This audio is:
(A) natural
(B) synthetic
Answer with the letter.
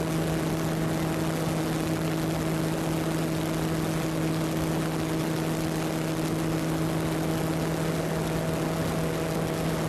A